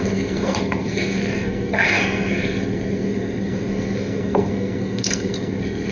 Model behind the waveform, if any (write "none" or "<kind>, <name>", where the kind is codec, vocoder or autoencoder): codec, SNAC